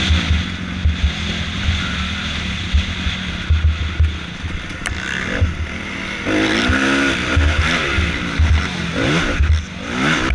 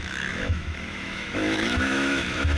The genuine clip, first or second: first